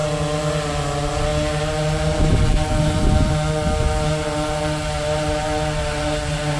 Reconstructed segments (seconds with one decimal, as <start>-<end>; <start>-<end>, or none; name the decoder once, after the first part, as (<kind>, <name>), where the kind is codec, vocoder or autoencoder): none